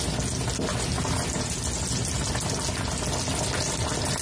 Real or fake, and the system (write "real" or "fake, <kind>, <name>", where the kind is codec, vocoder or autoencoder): real